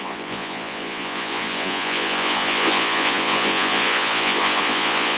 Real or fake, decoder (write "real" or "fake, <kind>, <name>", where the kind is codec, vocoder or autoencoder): fake, vocoder, Vocos